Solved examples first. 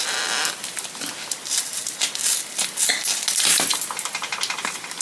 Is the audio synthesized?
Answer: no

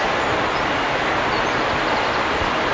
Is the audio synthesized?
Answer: no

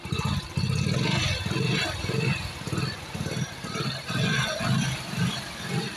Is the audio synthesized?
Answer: no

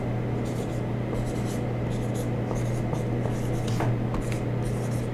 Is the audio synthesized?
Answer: no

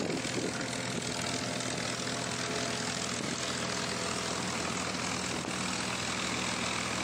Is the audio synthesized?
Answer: no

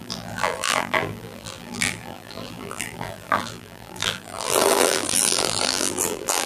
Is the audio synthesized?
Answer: yes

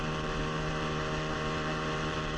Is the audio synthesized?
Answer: yes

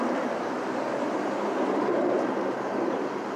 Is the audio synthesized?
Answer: yes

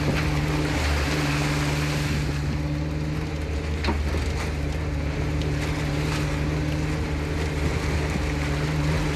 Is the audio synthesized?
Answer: no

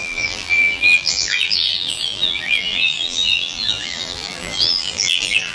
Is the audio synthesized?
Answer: yes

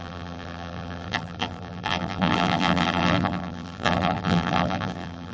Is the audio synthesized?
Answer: yes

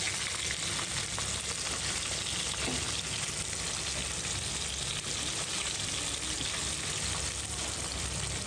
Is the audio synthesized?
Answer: no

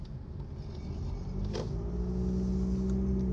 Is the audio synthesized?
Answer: no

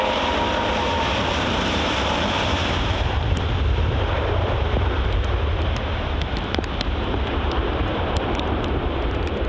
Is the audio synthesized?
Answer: yes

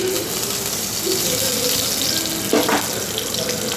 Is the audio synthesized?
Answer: no